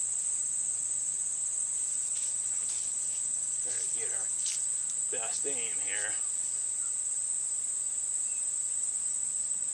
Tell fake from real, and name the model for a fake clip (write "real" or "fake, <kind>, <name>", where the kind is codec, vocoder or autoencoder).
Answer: real